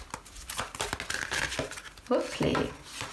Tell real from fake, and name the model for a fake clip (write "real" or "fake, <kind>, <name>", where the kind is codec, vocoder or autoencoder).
real